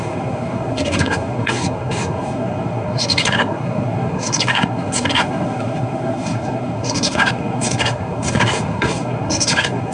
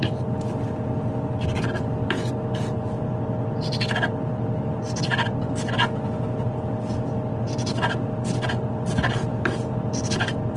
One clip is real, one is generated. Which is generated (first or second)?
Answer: first